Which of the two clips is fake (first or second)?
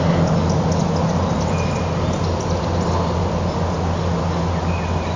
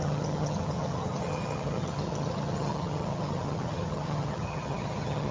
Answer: second